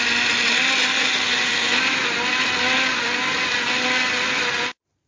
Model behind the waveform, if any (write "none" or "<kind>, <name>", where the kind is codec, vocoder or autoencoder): none